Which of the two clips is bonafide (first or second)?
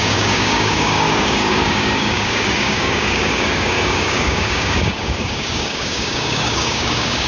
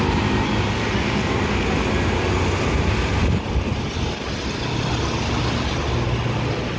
second